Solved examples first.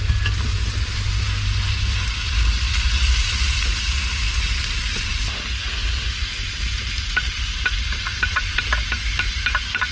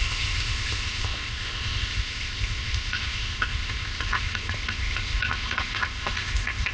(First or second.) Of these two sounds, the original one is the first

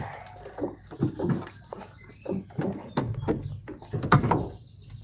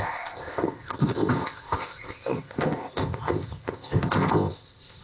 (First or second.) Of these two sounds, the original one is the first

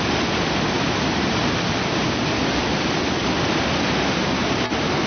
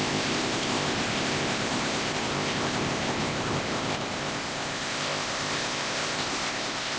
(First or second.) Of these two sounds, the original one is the first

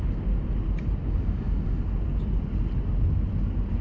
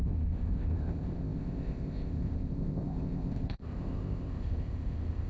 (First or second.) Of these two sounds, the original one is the first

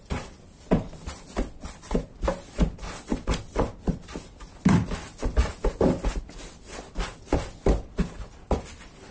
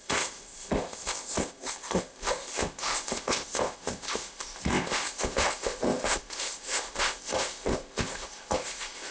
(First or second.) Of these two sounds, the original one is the first